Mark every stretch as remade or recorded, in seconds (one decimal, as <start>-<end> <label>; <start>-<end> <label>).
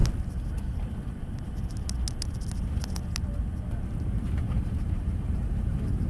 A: 0.0-3.7 recorded; 3.7-6.1 remade